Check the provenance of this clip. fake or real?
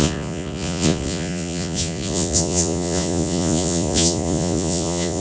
fake